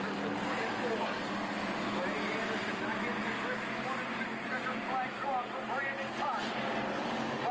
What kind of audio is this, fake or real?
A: real